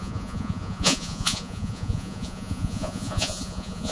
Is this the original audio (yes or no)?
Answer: no